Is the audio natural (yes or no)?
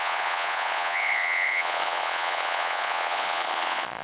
no